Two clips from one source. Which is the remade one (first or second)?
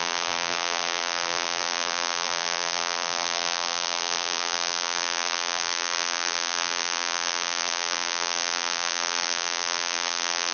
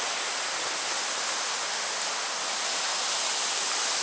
first